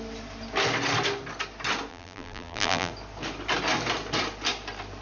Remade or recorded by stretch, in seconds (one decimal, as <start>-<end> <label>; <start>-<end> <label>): 0.0-1.9 recorded; 1.9-2.9 remade; 2.9-5.0 recorded